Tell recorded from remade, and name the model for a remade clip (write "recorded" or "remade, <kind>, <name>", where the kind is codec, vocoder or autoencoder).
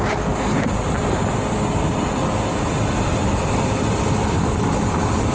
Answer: recorded